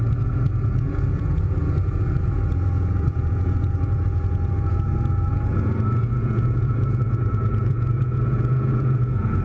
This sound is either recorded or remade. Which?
remade